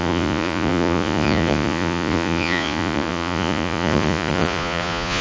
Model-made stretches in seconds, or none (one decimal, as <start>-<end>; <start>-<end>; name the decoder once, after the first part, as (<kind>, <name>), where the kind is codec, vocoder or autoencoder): 0.0-5.2 (vocoder, Vocos)